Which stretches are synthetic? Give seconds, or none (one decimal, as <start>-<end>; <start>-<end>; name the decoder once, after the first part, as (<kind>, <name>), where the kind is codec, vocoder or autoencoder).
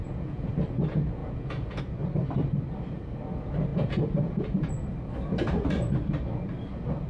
0.0-0.5 (vocoder, Vocos); 1.2-1.8; 3.7-4.7